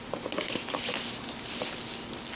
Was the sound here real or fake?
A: real